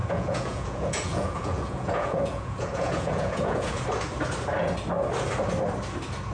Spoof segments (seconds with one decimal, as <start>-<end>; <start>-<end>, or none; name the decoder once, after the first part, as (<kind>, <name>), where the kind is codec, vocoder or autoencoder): 0.0-3.8 (vocoder, Vocos)